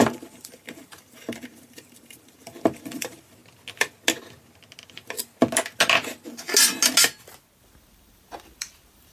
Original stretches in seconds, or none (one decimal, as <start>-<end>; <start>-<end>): 3.4-7.6